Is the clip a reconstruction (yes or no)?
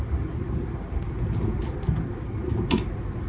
no